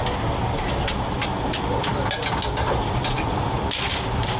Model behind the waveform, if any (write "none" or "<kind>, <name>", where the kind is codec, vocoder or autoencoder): none